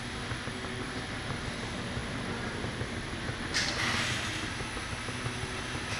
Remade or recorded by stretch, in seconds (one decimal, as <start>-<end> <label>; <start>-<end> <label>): 0.0-6.0 recorded